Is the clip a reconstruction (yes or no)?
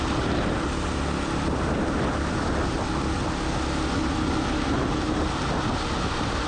no